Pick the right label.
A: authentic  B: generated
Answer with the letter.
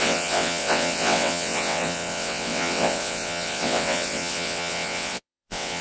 B